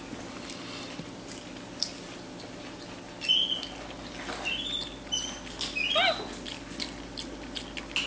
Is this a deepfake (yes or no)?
no